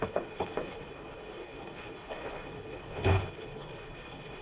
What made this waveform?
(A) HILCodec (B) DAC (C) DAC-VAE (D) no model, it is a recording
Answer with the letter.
A